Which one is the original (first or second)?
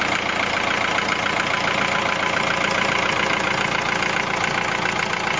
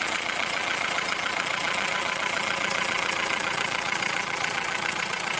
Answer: first